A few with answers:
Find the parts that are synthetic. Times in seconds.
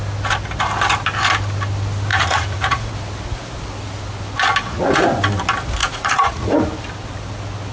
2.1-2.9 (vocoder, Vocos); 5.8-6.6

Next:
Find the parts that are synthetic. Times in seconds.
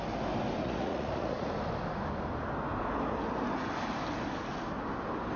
0.6-1.5 (vocoder, Vocos)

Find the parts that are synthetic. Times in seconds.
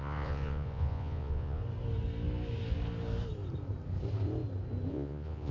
0.0-1.6 (vocoder, Vocos); 4.9-5.5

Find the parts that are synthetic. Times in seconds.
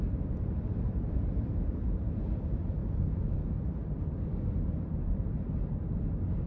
2.8-3.5 (vocoder, Vocos)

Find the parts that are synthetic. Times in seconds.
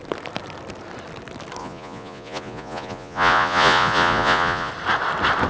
1.6-4.7 (vocoder, Vocos)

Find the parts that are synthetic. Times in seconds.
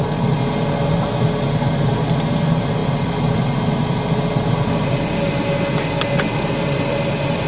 none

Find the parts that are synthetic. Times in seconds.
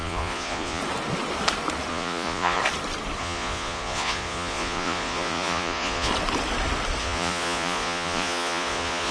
0.0-0.8 (vocoder, Vocos); 1.9-2.6; 3.2-6.1; 7.0-9.1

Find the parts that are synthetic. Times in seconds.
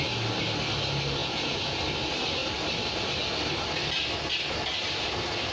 1.2-1.8 (vocoder, Vocos)